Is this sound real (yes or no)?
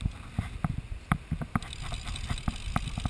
yes